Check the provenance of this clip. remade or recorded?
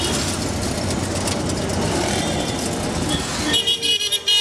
recorded